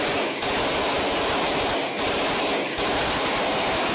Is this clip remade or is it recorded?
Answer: recorded